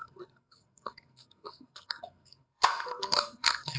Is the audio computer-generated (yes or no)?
yes